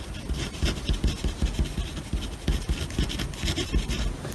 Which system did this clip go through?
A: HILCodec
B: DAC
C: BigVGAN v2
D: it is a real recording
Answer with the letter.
D